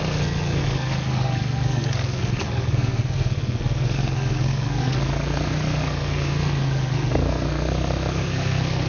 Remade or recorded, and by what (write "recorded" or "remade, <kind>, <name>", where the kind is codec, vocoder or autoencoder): remade, codec, SNAC